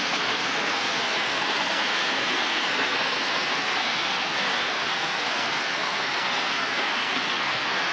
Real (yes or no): no